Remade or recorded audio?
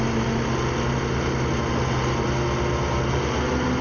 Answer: recorded